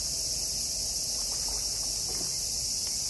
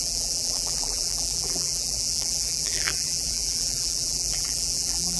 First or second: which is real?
first